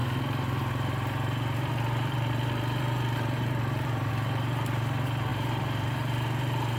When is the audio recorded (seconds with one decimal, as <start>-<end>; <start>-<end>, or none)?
none